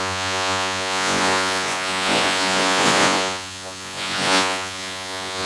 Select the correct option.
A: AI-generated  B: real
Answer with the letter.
A